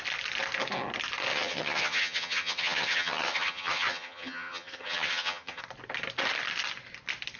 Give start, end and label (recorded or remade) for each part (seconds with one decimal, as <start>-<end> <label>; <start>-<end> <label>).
0.0-1.3 recorded; 1.3-5.6 remade; 5.6-7.4 recorded